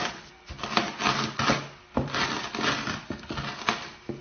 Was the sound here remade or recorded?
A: recorded